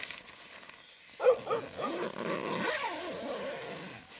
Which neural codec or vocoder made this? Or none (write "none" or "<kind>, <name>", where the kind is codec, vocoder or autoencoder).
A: none